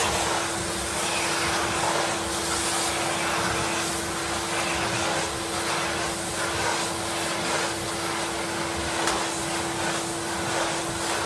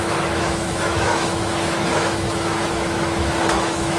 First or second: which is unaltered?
first